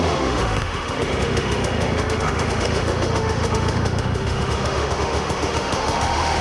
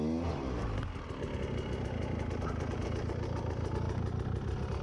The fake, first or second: first